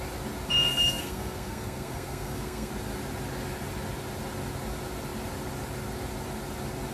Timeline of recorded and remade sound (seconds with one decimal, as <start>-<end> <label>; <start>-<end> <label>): 0.0-0.5 recorded; 0.5-2.7 remade; 2.7-6.9 recorded